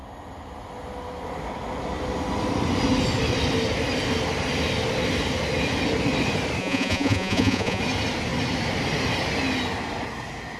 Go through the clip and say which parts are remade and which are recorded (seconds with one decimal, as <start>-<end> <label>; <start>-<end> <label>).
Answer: 0.0-6.6 recorded; 6.6-7.8 remade; 7.8-10.6 recorded

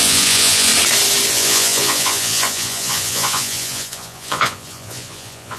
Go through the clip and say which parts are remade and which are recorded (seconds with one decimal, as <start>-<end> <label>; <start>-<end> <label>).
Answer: 0.0-0.7 remade; 0.7-1.3 recorded; 1.3-5.6 remade

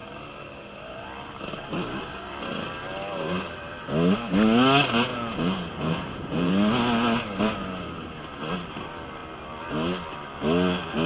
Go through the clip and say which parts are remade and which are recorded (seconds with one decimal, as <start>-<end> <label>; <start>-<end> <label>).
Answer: 0.0-5.1 recorded; 5.1-6.5 remade; 6.5-11.1 recorded